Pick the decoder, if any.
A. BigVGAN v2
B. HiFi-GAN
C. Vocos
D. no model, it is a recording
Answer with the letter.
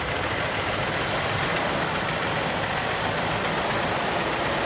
A